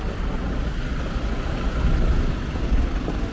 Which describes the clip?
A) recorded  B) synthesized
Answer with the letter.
A